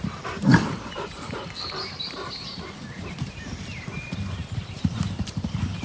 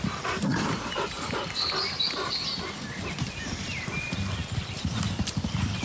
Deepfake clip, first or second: first